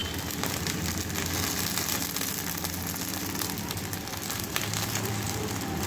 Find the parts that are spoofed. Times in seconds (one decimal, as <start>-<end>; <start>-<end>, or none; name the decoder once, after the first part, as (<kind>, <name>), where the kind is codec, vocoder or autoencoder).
3.1-5.9 (vocoder, BigVGAN v2)